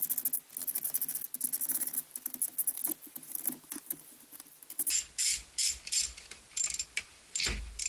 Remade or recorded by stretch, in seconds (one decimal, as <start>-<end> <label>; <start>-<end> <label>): 0.0-7.9 recorded